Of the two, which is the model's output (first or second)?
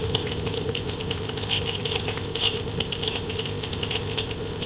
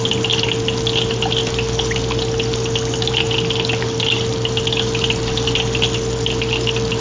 first